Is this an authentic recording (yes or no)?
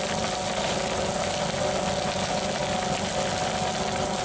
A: yes